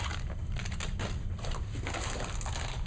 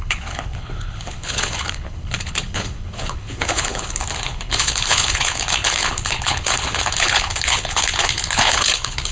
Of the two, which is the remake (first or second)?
second